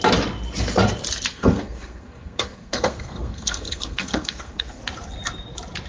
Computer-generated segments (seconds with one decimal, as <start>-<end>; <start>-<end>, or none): 1.3-4.8